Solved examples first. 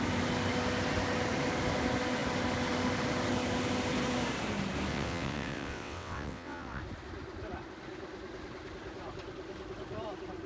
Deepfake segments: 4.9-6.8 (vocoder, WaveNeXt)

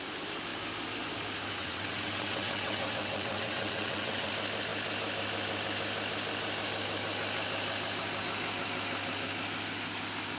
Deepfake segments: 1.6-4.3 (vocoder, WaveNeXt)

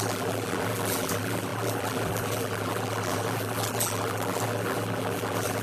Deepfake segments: 0.0-5.6 (vocoder, BigVGAN v2)

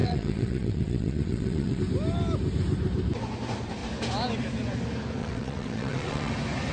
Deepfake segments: 0.0-1.8 (vocoder, WaveNeXt); 5.2-6.3